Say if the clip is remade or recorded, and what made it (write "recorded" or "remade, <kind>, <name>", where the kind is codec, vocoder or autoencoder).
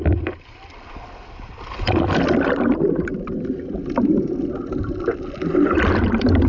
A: recorded